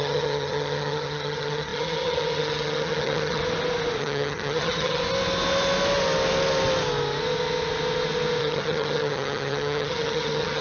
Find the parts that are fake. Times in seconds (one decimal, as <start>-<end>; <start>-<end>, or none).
0.0-3.4; 4.0-5.0; 8.4-10.6